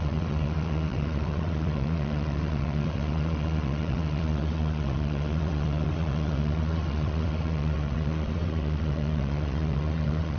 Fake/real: fake